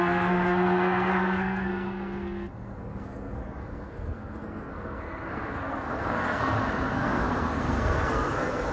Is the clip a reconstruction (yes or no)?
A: yes